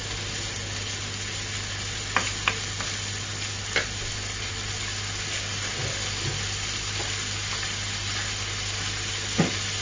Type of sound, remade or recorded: recorded